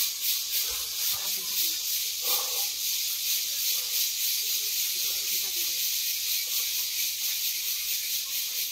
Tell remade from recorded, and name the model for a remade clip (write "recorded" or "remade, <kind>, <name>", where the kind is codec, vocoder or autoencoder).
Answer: recorded